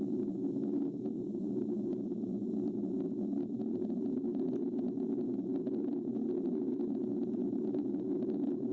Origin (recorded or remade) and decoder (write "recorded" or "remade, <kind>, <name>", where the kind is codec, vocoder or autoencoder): recorded